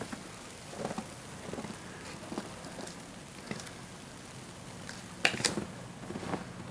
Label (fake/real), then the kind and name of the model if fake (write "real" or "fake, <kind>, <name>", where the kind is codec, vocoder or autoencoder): real